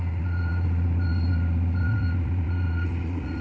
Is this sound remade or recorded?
remade